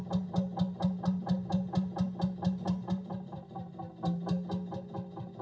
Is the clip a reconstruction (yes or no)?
no